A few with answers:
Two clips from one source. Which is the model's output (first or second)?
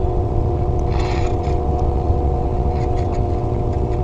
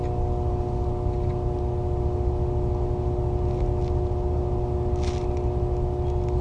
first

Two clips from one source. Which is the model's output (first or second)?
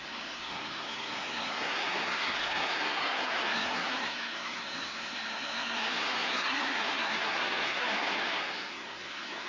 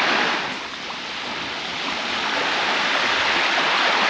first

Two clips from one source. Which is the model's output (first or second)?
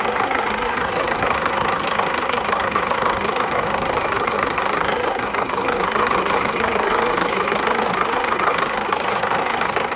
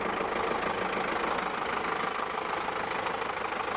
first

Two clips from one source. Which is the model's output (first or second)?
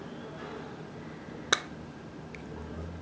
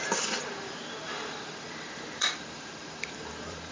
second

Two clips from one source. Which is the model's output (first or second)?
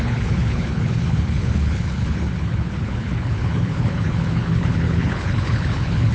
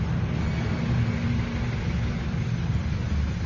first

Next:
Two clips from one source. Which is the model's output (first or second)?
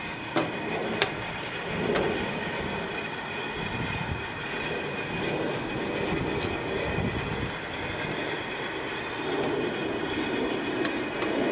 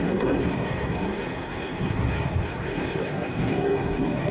second